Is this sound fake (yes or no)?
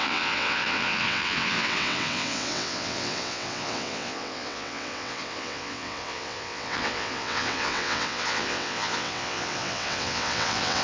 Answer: yes